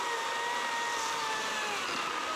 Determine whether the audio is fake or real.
real